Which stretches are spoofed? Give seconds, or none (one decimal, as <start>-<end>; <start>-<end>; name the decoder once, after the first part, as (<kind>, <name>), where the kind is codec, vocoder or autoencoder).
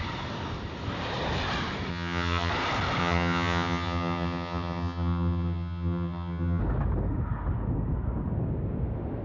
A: 1.9-2.5 (vocoder, HiFi-GAN); 3.0-6.6